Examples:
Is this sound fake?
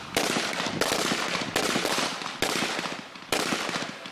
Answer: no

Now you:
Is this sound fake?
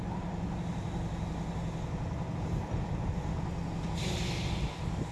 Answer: no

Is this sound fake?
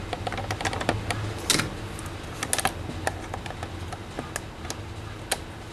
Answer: no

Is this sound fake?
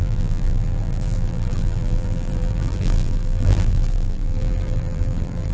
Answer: yes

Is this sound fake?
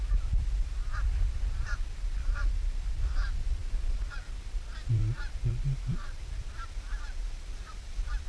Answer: yes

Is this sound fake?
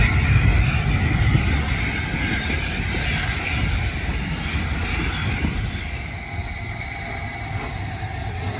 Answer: no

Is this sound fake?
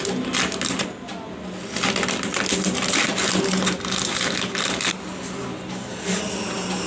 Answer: no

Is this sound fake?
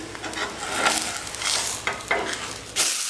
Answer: no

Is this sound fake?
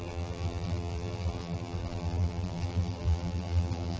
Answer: yes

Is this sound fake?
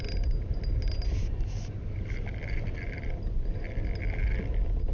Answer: no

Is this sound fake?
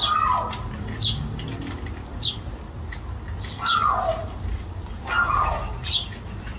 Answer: no